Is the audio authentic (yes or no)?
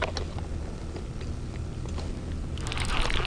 yes